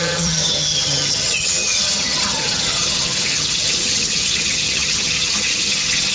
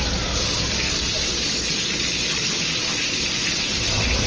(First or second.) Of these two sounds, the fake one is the first